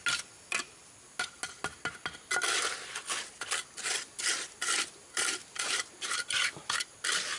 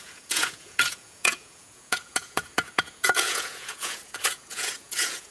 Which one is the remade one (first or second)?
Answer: second